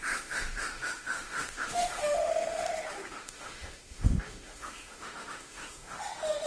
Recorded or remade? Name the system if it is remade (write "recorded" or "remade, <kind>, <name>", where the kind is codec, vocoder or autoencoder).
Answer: remade, autoencoder, DAC-VAE